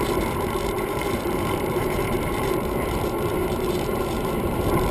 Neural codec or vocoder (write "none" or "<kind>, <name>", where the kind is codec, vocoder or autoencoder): vocoder, BigVGAN v2